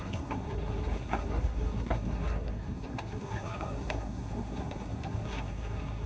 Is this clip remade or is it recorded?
remade